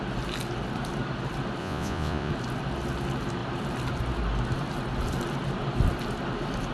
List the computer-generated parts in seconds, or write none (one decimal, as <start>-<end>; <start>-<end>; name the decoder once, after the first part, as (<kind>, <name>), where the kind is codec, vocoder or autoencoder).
1.6-2.3 (vocoder, Vocos)